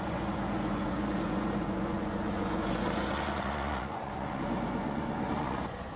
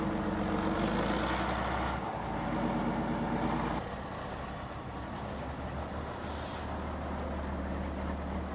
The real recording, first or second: second